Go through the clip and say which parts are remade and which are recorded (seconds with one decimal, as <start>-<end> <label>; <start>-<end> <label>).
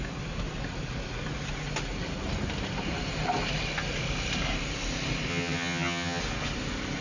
0.0-5.3 recorded; 5.3-6.2 remade; 6.2-7.0 recorded